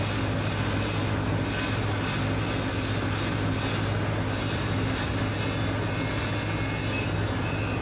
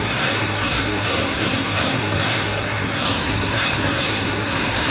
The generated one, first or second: second